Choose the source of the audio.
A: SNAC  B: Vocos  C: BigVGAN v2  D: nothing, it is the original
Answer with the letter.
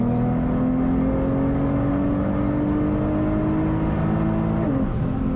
D